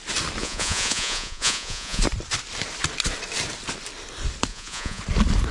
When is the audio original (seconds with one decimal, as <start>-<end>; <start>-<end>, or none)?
0.0-0.4; 2.0-4.5; 5.0-5.5